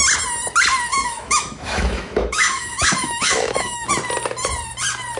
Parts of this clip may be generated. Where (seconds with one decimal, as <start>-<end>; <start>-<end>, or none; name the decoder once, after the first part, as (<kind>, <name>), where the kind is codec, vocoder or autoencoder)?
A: 0.9-3.9 (autoencoder, DAC-VAE)